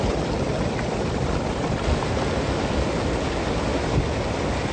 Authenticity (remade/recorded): recorded